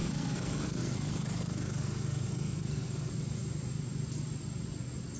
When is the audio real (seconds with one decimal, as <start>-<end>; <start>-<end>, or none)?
3.1-5.2